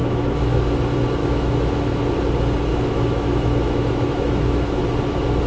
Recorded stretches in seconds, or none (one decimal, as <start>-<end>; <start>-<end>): 0.6-1.2; 2.0-2.7; 4.8-5.5